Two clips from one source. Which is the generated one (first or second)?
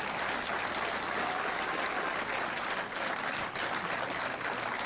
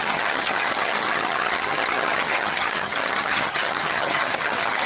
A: second